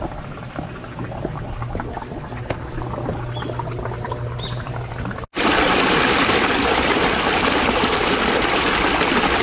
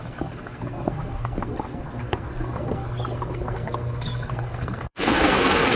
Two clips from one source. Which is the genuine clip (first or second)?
first